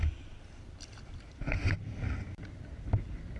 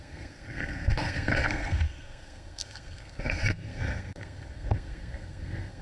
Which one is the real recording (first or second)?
first